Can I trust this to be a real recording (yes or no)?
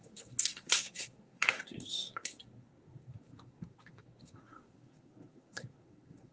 no